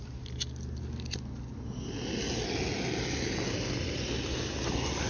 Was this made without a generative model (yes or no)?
yes